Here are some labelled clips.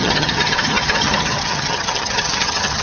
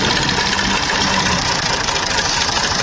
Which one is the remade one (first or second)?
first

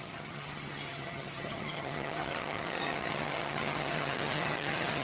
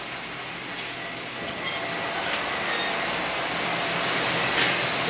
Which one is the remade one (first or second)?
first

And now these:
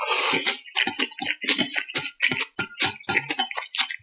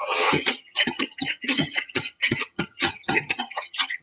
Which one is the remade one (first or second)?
second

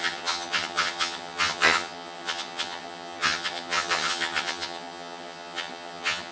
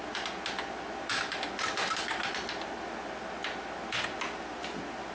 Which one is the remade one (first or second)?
first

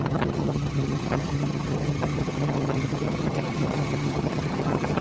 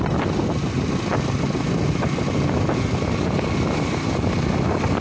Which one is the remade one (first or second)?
first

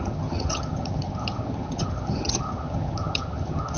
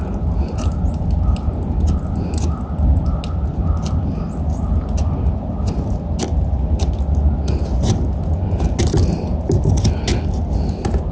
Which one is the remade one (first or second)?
first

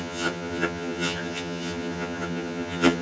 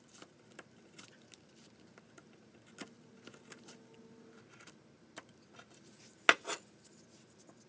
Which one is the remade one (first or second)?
first